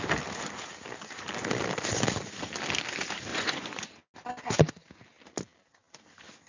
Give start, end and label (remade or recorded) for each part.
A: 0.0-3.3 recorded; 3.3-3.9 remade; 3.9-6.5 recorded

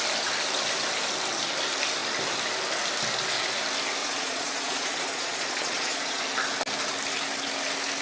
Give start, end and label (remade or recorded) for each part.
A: 0.0-4.0 recorded; 4.0-6.2 remade; 6.2-8.0 recorded

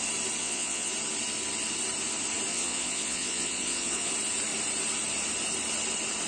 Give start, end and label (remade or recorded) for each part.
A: 0.0-0.4 recorded; 0.4-0.9 remade; 0.9-2.5 recorded; 2.5-4.1 remade; 4.1-6.3 recorded

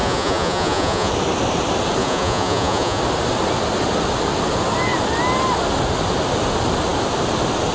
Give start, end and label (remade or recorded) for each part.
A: 0.0-1.1 remade; 1.1-2.0 recorded; 2.0-3.0 remade; 3.0-7.7 recorded

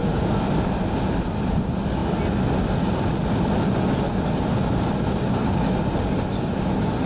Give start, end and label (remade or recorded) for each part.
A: 0.0-7.1 recorded